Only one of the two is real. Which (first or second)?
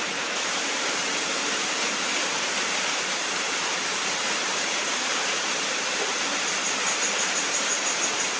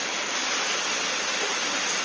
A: second